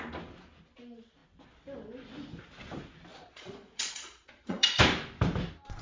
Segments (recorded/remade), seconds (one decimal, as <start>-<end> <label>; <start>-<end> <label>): 0.0-3.1 recorded; 3.1-4.8 remade; 4.8-5.8 recorded